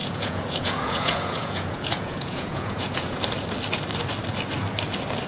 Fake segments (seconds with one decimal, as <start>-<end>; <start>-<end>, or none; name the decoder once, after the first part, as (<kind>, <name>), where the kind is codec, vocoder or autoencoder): 0.0-3.2 (vocoder, Vocos)